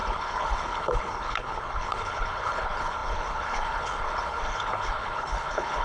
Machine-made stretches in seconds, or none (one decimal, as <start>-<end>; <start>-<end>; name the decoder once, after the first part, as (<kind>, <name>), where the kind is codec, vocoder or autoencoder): 0.0-5.8 (codec, HILCodec)